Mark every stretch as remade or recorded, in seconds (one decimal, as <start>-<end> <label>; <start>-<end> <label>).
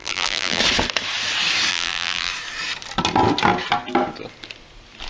0.0-0.6 remade; 0.6-1.7 recorded; 1.7-2.3 remade; 2.3-5.1 recorded